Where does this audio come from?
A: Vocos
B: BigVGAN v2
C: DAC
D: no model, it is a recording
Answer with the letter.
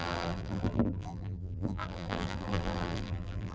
B